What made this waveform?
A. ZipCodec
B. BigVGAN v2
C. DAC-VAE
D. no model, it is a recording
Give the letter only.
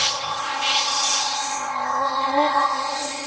A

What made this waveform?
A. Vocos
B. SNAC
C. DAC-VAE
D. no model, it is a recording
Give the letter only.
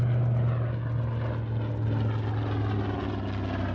D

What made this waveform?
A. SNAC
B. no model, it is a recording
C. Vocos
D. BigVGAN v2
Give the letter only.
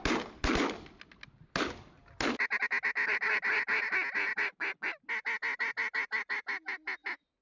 B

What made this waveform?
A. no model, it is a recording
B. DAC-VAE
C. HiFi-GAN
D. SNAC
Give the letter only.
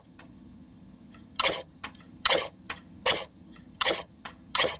C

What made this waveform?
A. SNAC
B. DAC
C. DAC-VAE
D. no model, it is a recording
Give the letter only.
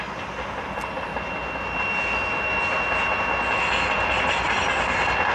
D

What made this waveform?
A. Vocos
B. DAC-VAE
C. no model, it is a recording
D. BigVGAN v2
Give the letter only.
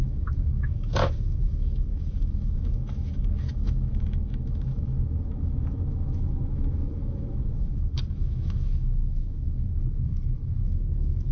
B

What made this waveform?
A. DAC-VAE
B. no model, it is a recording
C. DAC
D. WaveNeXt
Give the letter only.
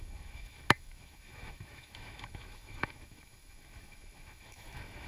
A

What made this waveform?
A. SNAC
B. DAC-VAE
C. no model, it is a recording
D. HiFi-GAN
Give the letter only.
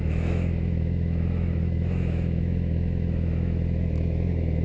B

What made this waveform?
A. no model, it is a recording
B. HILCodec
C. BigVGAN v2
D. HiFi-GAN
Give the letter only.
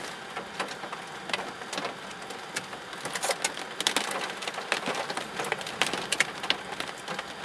A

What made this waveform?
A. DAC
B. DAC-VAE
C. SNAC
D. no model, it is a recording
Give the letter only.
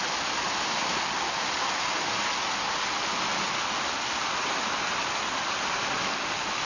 D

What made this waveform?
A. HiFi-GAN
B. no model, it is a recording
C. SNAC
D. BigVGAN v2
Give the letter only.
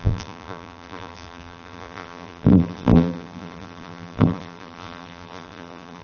D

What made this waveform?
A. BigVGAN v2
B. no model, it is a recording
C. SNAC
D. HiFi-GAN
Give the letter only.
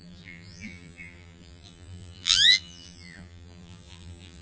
A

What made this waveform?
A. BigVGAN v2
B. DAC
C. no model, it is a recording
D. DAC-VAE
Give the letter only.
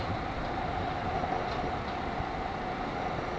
C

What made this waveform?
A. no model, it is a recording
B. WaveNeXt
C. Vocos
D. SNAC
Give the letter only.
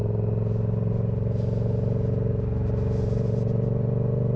A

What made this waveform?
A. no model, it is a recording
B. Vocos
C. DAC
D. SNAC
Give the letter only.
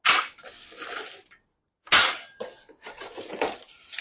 A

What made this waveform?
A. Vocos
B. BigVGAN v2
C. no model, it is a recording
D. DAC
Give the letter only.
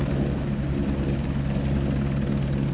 C